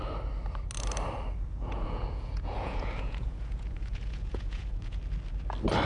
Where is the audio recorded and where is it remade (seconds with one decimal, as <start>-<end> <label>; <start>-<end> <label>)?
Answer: 0.0-1.5 recorded; 1.5-5.0 remade; 5.0-5.9 recorded